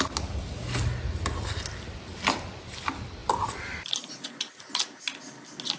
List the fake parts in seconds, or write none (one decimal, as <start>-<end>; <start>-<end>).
none